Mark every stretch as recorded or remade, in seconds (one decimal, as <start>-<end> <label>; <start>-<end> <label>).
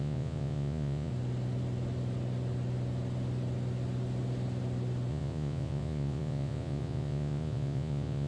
0.0-1.1 remade; 1.1-5.1 recorded; 5.1-8.3 remade